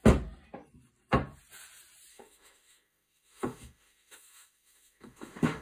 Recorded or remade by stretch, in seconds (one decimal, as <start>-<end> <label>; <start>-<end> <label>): 0.0-2.1 recorded; 2.1-5.6 remade